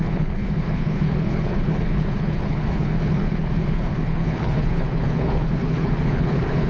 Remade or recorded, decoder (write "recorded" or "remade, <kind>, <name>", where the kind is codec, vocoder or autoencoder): remade, codec, HILCodec